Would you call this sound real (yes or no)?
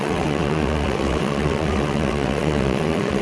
no